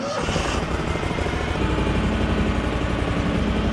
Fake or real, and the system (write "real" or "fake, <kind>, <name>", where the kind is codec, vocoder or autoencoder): real